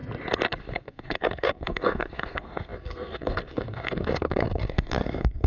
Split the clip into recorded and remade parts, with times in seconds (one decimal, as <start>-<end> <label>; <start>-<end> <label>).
0.0-0.6 recorded; 0.6-5.5 remade